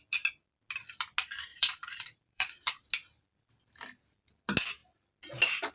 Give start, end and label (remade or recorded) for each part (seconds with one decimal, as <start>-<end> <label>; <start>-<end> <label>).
0.0-1.5 recorded; 1.5-2.8 remade; 2.8-5.7 recorded